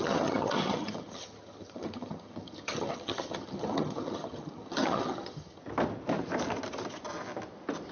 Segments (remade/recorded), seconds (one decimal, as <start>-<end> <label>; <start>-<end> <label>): 0.0-5.6 remade; 5.6-7.9 recorded